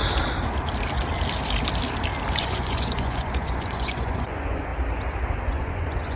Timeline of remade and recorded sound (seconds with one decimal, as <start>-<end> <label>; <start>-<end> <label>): 0.0-2.4 recorded; 2.4-4.7 remade; 4.7-5.4 recorded; 5.4-6.2 remade